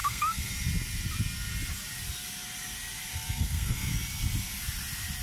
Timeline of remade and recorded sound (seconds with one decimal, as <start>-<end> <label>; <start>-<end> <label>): 0.0-0.5 remade; 0.5-3.1 recorded; 3.1-3.9 remade; 3.9-5.2 recorded